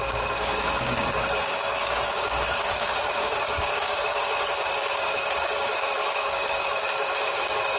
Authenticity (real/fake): fake